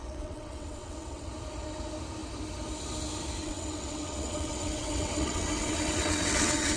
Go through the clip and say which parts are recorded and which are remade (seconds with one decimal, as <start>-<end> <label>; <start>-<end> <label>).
0.0-1.3 remade; 1.3-3.4 recorded; 3.4-6.8 remade